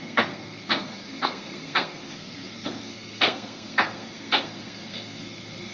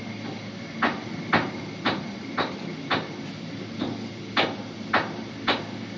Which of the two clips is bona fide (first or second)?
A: second